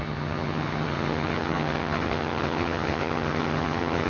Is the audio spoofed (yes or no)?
yes